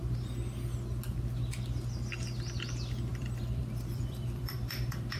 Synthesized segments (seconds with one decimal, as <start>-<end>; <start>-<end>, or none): 3.1-5.2